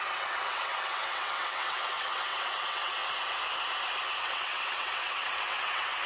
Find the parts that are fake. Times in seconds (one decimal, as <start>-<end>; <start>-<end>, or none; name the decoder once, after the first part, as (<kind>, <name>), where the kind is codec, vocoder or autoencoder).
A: 0.0-3.0 (vocoder, WaveNeXt); 4.2-6.1